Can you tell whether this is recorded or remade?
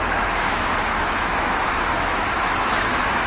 remade